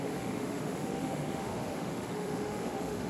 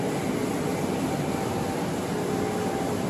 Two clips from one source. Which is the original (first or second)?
second